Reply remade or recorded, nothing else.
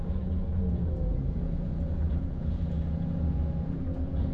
remade